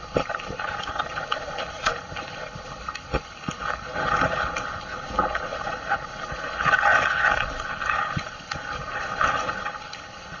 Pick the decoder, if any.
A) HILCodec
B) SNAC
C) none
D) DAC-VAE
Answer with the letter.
A